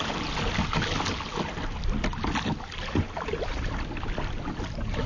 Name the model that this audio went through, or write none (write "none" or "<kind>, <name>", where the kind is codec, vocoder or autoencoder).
none